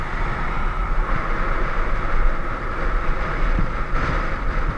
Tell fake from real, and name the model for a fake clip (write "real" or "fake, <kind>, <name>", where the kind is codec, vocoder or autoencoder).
real